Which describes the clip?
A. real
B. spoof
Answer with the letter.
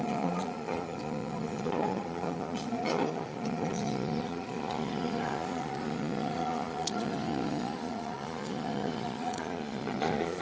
B